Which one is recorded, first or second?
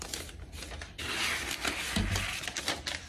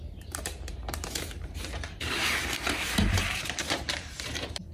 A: first